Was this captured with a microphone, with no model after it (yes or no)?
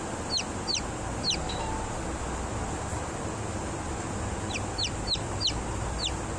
yes